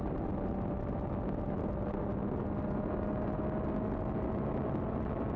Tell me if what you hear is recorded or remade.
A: recorded